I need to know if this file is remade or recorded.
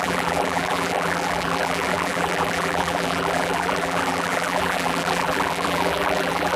remade